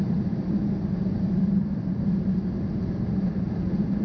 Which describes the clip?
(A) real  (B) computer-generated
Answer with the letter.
B